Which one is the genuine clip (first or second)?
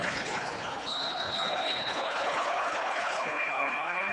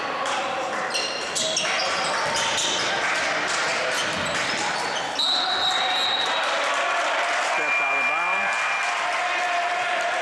second